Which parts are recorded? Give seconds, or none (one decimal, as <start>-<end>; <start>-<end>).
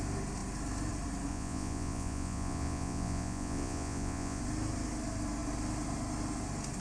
0.0-1.3; 4.4-6.8